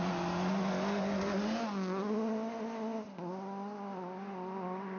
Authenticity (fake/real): real